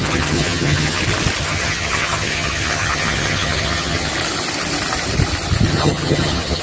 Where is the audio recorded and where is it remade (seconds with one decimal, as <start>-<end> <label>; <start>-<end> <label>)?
0.0-1.0 remade; 1.0-1.4 recorded; 1.4-4.1 remade; 4.1-5.7 recorded; 5.7-6.6 remade

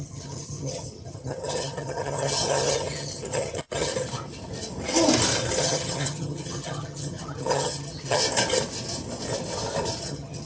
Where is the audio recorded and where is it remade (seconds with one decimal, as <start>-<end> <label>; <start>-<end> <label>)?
0.0-3.9 remade; 3.9-5.6 recorded; 5.6-8.2 remade; 8.2-10.0 recorded; 10.0-10.5 remade

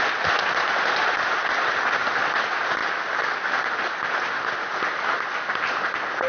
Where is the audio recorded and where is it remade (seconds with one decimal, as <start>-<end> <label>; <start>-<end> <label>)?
0.0-6.3 recorded

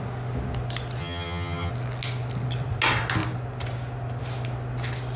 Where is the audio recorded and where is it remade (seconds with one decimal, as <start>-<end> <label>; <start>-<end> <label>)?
0.0-1.0 recorded; 1.0-1.7 remade; 1.7-5.2 recorded

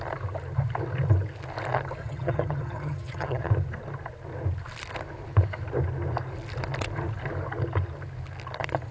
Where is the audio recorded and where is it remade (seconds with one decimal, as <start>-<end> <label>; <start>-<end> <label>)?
0.0-2.0 recorded; 2.0-3.5 remade; 3.5-8.9 recorded

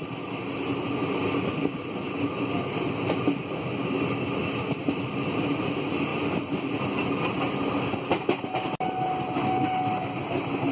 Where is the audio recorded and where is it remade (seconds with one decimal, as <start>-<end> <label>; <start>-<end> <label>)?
0.0-10.7 recorded